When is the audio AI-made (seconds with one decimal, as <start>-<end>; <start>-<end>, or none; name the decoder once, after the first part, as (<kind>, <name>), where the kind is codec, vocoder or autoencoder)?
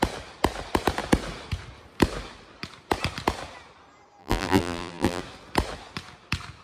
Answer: 4.2-5.2 (vocoder, BigVGAN v2)